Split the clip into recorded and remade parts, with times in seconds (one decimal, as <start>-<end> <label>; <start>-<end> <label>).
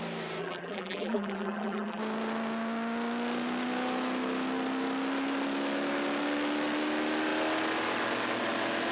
0.0-0.4 recorded; 0.4-2.0 remade; 2.0-8.9 recorded